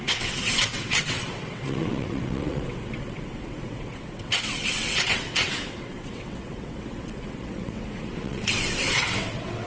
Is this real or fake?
fake